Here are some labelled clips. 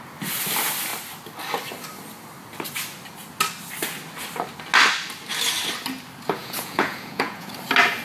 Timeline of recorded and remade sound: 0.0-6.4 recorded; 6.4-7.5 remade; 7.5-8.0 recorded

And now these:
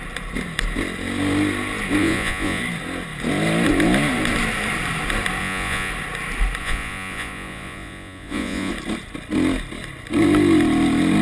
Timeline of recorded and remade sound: 0.0-2.0 recorded; 2.0-2.6 remade; 2.6-5.4 recorded; 5.4-5.9 remade; 5.9-6.6 recorded; 6.6-8.7 remade; 8.7-11.2 recorded

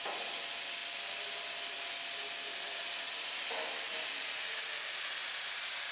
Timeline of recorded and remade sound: 0.0-5.9 recorded